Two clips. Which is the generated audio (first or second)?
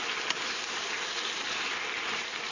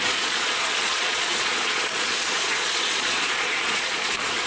second